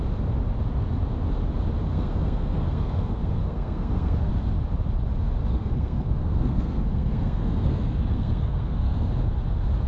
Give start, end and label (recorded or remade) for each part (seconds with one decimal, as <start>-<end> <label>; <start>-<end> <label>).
0.0-1.9 recorded; 1.9-4.3 remade; 4.3-5.5 recorded; 5.5-9.1 remade; 9.1-9.9 recorded